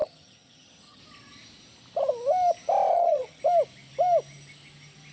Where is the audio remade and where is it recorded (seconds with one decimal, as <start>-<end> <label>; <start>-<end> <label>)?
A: 0.0-1.0 remade; 1.0-2.9 recorded; 2.9-3.4 remade; 3.4-5.1 recorded